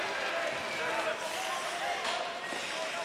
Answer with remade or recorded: recorded